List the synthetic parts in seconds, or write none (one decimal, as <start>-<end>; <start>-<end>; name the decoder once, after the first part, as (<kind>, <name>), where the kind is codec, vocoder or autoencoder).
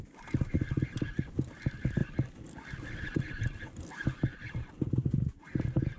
none